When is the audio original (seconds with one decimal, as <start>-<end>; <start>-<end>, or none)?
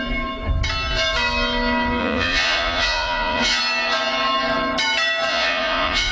0.0-2.0; 3.6-5.3